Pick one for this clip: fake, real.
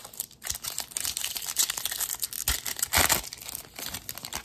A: real